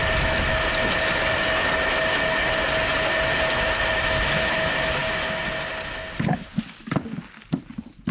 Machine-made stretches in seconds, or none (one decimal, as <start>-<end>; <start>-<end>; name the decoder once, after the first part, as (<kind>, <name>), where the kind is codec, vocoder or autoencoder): none